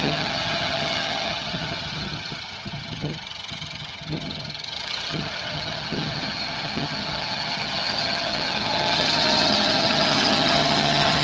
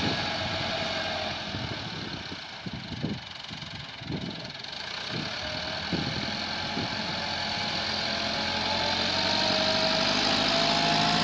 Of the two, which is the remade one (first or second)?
first